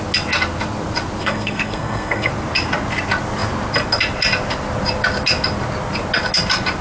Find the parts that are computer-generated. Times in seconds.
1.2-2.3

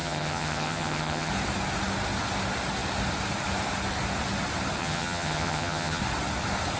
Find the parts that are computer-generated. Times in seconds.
0.0-1.3; 4.8-6.0

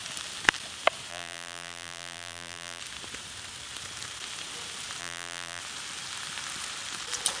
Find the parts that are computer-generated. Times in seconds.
1.1-2.8; 5.0-5.6

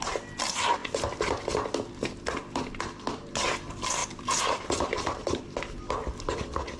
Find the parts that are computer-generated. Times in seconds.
4.0-5.4

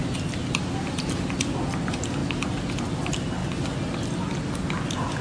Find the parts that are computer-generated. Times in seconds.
none

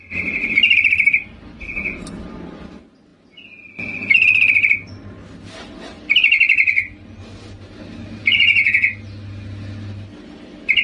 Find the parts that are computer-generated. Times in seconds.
8.2-8.9